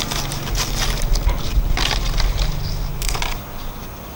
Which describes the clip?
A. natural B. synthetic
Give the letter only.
A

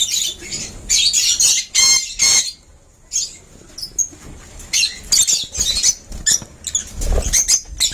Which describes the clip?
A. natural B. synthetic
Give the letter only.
A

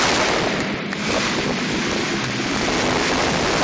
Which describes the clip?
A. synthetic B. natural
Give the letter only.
B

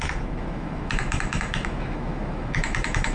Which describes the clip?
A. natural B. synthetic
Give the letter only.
B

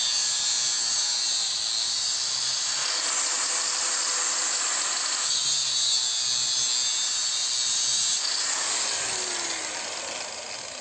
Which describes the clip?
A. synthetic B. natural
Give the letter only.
B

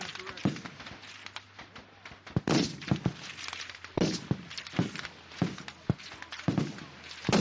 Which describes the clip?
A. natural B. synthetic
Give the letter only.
A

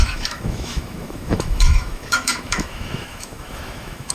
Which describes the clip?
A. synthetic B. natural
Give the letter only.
A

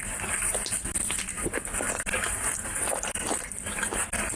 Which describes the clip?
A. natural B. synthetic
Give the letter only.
A